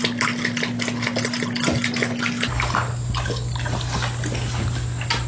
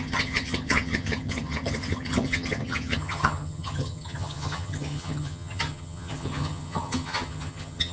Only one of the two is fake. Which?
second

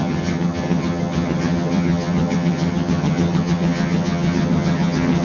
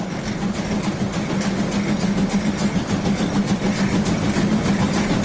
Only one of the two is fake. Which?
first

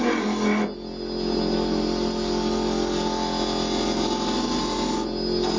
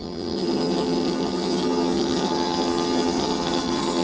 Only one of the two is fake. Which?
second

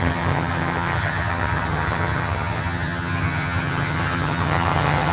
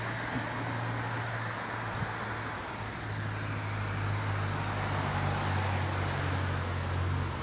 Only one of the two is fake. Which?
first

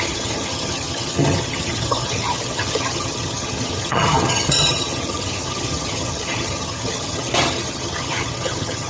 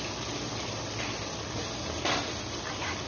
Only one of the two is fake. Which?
first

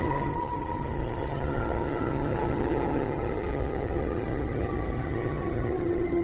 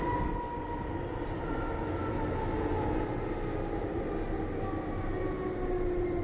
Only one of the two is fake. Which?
first